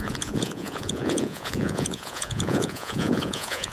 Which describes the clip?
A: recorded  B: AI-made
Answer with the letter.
B